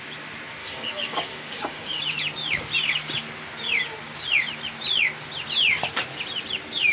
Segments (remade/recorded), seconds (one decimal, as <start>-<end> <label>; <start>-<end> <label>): 0.0-0.6 recorded; 0.6-2.0 remade; 2.0-6.9 recorded